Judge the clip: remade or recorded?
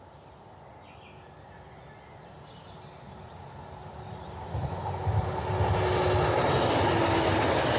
recorded